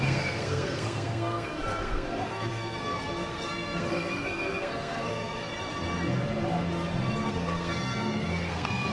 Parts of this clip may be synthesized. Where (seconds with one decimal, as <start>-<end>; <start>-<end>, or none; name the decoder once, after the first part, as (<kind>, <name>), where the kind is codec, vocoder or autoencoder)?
0.0-5.5 (codec, SNAC); 7.3-8.9